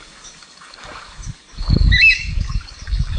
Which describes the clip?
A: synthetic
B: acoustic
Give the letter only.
A